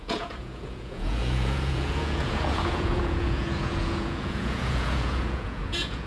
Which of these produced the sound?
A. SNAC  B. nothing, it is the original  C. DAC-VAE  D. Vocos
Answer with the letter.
D